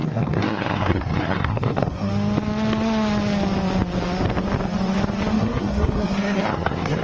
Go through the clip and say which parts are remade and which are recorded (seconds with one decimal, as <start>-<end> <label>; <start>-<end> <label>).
0.0-2.1 remade; 2.1-5.3 recorded; 5.3-7.0 remade